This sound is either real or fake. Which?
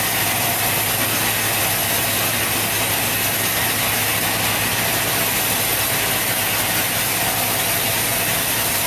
real